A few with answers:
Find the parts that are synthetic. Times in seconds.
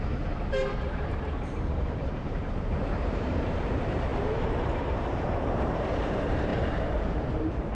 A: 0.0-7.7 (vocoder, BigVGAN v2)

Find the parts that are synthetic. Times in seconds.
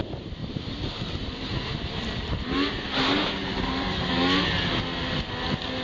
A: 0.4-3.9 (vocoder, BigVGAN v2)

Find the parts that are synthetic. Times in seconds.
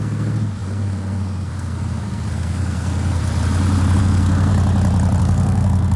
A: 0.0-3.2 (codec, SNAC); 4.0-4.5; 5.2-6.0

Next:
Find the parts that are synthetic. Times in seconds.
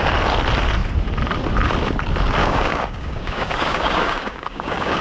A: 2.4-5.0 (codec, DAC)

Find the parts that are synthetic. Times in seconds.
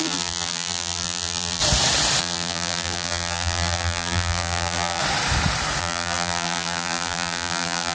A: 0.0-1.6 (vocoder, BigVGAN v2); 2.2-5.0; 5.8-7.9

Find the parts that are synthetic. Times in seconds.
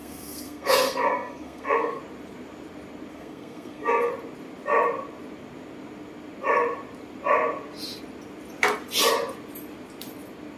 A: 0.0-2.0 (codec, SNAC); 3.1-4.1